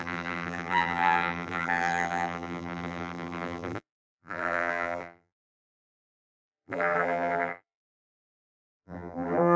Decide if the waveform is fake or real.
fake